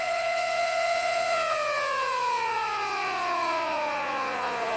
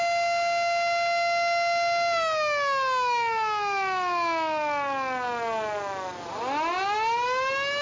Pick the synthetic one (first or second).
first